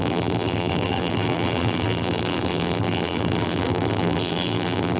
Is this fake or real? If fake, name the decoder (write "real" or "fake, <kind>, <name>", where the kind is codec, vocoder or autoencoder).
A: fake, vocoder, BigVGAN v2